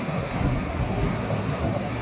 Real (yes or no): no